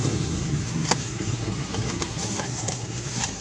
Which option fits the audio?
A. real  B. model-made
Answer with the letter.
B